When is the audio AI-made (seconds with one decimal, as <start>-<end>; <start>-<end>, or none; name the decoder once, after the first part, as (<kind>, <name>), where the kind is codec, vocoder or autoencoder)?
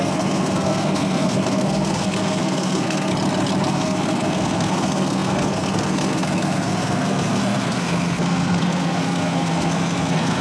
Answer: 0.0-3.1 (codec, SNAC); 3.7-10.4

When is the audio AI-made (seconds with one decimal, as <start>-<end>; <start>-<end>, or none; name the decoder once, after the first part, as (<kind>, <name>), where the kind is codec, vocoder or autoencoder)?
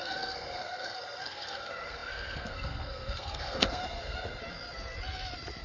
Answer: 0.0-4.4 (codec, SNAC)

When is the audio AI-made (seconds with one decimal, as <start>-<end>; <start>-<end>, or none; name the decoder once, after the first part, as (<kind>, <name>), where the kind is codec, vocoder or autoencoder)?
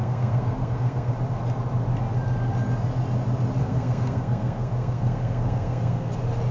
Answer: 0.0-1.1 (codec, SNAC); 3.6-6.1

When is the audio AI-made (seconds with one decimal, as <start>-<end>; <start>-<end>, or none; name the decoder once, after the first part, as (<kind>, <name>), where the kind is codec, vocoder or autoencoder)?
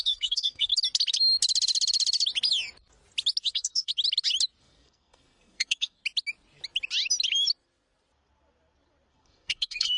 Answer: 0.0-0.7 (codec, SNAC); 3.5-3.9; 4.6-6.0; 9.1-10.0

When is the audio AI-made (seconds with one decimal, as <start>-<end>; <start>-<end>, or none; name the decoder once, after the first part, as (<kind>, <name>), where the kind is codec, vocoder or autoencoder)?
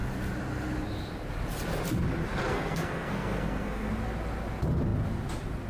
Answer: 2.4-3.9 (codec, SNAC)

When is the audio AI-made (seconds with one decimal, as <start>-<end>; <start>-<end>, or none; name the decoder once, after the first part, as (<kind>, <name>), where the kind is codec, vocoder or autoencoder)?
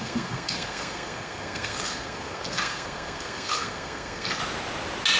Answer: 0.0-4.4 (codec, SNAC)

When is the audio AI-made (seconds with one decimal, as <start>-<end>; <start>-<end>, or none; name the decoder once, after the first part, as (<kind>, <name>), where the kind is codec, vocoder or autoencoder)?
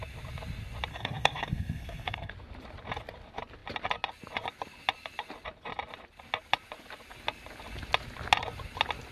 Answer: 0.9-2.3 (codec, SNAC)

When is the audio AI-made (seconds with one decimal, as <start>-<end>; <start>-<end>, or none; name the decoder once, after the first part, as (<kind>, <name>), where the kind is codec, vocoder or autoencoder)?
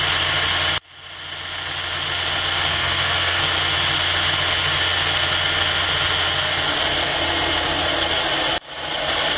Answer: 2.7-3.4 (codec, SNAC)